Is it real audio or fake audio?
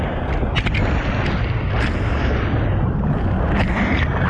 real